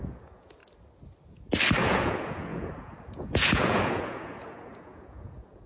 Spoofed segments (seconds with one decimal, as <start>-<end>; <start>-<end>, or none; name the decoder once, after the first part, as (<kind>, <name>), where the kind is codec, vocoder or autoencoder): 0.0-0.6 (vocoder, Vocos); 1.8-5.7